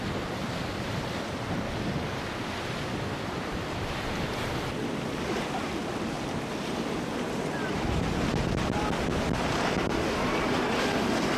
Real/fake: real